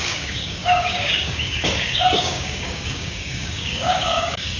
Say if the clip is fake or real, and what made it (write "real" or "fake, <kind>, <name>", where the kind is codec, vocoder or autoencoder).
fake, codec, DAC